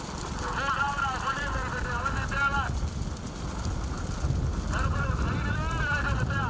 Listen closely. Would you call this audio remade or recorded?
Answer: recorded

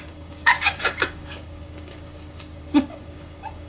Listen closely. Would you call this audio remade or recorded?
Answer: remade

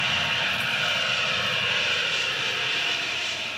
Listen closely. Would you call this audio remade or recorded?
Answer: recorded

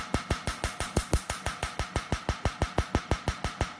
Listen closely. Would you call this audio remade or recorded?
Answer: recorded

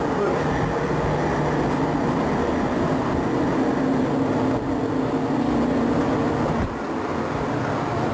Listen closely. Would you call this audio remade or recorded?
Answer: recorded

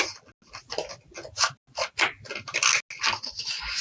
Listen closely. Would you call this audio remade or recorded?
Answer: recorded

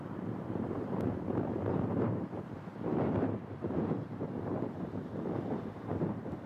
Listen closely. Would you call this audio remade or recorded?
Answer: remade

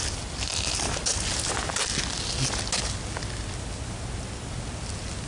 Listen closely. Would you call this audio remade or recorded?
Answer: recorded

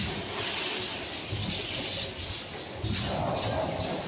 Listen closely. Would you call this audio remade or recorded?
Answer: recorded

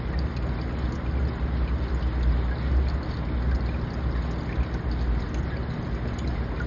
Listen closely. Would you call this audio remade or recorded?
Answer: recorded